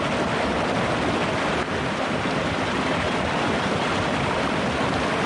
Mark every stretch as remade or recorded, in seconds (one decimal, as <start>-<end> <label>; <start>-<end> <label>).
0.0-1.2 recorded; 1.2-4.4 remade; 4.4-5.3 recorded